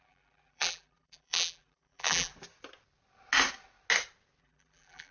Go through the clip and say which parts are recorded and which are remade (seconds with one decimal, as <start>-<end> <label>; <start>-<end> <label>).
0.0-2.3 remade; 2.3-4.4 recorded; 4.4-5.1 remade